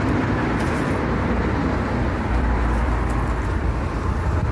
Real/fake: fake